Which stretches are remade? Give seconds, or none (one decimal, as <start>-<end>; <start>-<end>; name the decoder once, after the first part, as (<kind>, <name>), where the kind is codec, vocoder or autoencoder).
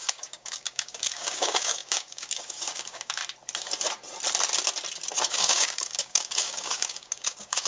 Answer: 0.0-3.2 (codec, DAC); 5.3-7.7